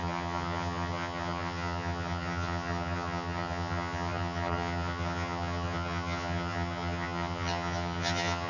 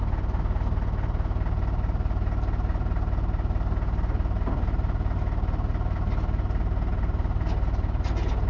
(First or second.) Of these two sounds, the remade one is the first